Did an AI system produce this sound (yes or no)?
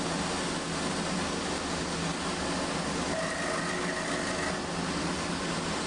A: no